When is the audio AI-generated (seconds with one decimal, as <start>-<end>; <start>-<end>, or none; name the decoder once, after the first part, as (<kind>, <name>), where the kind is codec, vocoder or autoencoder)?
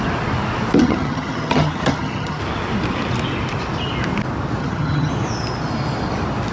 0.8-2.4 (vocoder, HiFi-GAN); 4.6-5.1